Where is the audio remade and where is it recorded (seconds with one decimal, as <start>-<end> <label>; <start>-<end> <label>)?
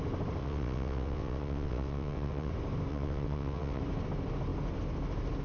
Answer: 0.0-0.4 recorded; 0.4-2.5 remade; 2.5-2.9 recorded; 2.9-3.8 remade; 3.8-5.4 recorded